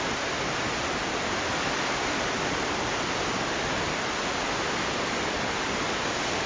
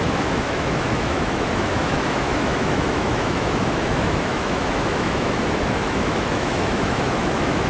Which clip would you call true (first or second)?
first